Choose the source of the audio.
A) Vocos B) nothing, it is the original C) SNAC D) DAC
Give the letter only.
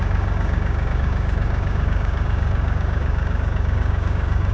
D